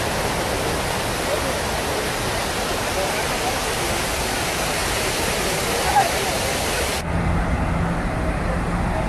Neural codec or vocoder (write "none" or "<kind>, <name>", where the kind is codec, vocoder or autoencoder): none